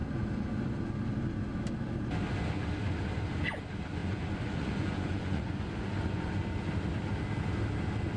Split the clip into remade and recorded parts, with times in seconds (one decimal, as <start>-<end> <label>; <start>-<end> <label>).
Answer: 0.0-4.0 recorded; 4.0-6.4 remade; 6.4-8.2 recorded